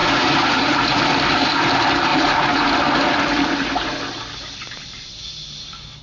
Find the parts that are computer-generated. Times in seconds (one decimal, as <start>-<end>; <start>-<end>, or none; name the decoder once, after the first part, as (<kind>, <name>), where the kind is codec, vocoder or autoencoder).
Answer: 0.0-1.0 (vocoder, Vocos); 2.1-2.7